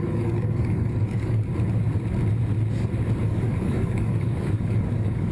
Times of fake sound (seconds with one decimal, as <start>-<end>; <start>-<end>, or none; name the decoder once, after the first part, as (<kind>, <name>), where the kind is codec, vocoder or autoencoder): 0.0-1.5 (codec, DAC); 3.2-5.3